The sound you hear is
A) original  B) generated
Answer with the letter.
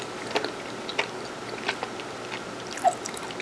A